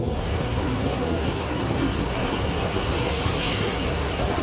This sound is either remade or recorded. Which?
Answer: remade